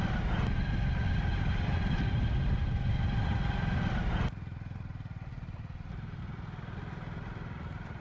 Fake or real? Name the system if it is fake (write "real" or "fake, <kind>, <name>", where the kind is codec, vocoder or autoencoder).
real